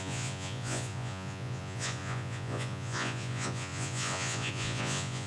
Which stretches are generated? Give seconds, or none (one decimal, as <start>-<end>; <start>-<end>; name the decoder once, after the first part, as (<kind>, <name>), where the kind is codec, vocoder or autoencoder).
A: 0.0-5.3 (vocoder, Vocos)